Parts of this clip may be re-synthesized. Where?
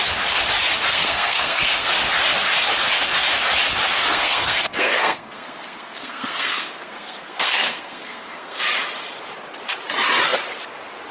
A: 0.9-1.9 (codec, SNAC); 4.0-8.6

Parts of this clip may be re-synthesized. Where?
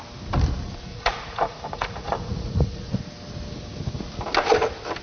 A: 0.9-3.0 (vocoder, Vocos)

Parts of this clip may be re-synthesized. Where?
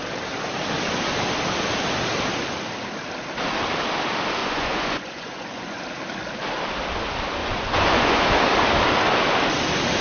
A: 4.4-5.8 (vocoder, Vocos); 7.4-8.2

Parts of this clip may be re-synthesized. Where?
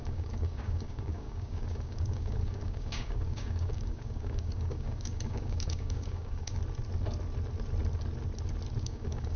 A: 0.0-6.6 (codec, DAC); 8.8-9.4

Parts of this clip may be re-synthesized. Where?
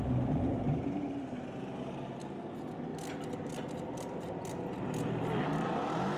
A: 0.4-2.2 (vocoder, BigVGAN v2)